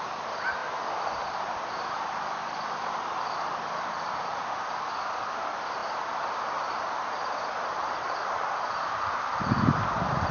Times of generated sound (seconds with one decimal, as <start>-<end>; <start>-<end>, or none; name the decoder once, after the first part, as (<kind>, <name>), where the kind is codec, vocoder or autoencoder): none